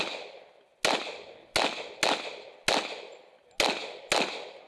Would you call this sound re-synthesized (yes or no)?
no